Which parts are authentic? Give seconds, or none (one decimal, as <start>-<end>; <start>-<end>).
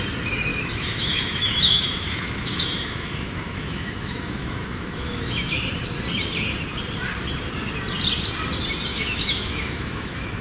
0.0-0.5; 5.5-8.9